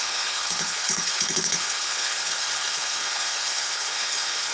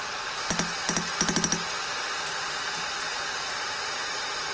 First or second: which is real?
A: second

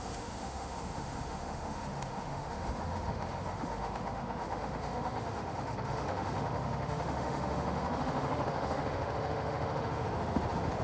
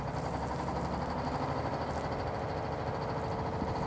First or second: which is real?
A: second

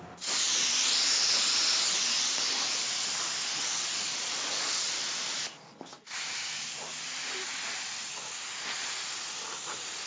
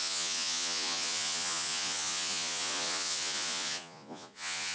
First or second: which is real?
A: first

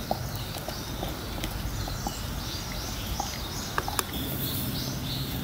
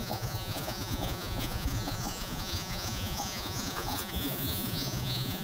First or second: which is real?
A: first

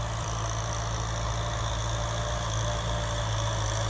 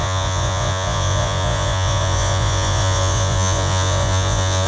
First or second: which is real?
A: first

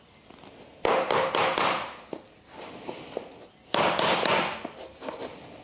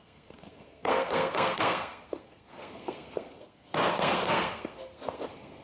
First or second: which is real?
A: first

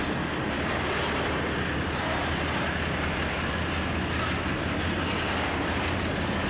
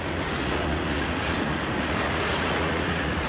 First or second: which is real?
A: first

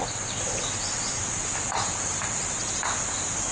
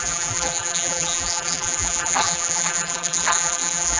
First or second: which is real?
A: first